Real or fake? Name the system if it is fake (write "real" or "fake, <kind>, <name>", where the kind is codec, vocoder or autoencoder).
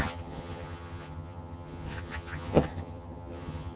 fake, vocoder, HiFi-GAN